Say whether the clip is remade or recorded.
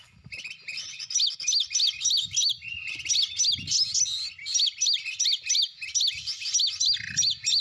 recorded